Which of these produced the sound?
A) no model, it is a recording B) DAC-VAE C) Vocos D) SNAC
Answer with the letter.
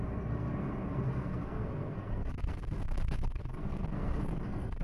D